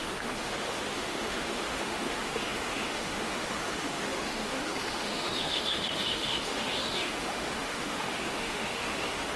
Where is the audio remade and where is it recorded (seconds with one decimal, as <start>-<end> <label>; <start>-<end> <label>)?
0.0-9.4 remade

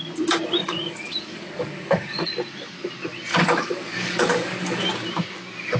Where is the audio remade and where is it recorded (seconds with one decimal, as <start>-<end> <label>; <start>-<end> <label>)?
0.0-0.6 recorded; 0.6-2.3 remade; 2.3-3.3 recorded; 3.3-4.9 remade; 4.9-5.8 recorded

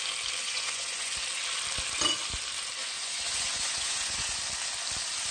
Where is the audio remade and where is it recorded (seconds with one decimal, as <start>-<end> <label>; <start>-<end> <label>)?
0.0-0.4 recorded; 0.4-1.1 remade; 1.1-2.8 recorded; 2.8-4.4 remade; 4.4-5.3 recorded

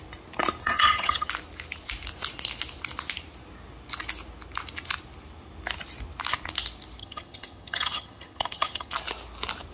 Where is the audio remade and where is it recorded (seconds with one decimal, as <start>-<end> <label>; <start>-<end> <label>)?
0.0-0.6 recorded; 0.6-1.3 remade; 1.3-7.0 recorded; 7.0-8.9 remade; 8.9-9.7 recorded

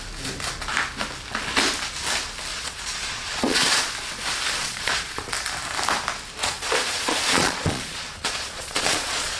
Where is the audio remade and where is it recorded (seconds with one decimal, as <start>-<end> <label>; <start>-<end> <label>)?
0.0-2.5 recorded; 2.5-3.9 remade; 3.9-4.6 recorded; 4.6-5.3 remade; 5.3-6.4 recorded; 6.4-9.4 remade

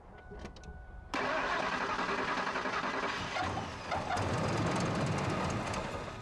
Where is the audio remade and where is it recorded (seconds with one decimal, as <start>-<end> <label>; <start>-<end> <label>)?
0.0-6.2 recorded

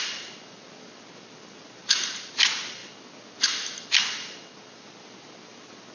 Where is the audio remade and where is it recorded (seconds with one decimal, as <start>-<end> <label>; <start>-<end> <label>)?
0.0-5.9 recorded

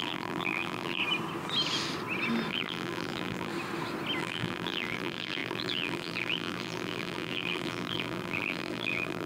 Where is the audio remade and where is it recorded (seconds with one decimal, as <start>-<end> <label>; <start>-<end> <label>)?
0.0-1.0 remade; 1.0-2.5 recorded; 2.5-3.5 remade; 3.5-4.2 recorded; 4.2-9.3 remade